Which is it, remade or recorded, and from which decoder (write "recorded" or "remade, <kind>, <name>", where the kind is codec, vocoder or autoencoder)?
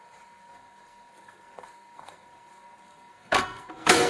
remade, codec, SNAC